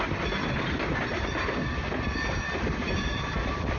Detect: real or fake real